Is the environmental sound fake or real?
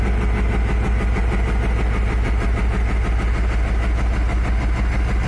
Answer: real